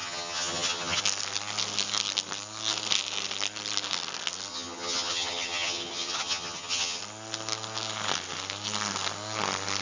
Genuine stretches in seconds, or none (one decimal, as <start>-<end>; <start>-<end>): 1.0-4.5; 7.0-9.8